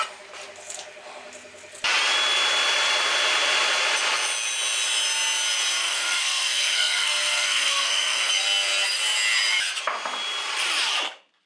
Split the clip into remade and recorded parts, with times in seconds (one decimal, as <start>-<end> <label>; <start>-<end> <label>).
0.0-5.8 recorded; 5.8-8.3 remade; 8.3-11.5 recorded